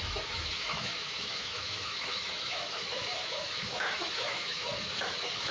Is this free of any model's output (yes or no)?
no